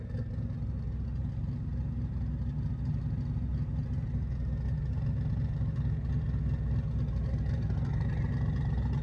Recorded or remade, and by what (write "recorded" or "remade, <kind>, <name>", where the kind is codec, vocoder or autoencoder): recorded